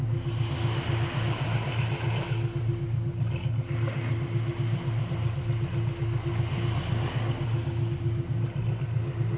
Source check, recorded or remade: recorded